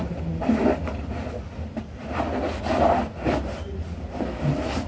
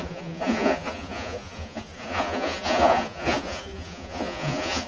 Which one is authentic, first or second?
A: first